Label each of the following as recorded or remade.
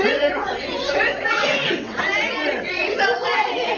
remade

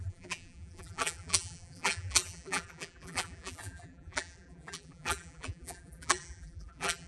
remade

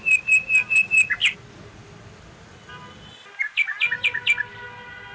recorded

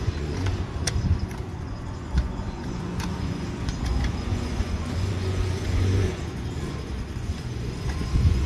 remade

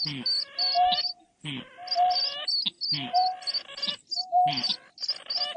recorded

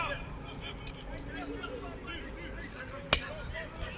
recorded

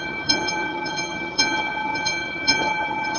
remade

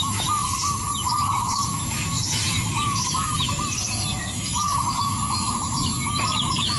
remade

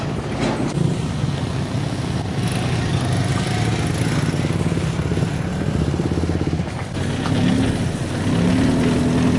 recorded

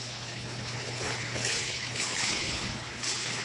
remade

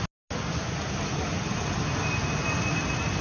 recorded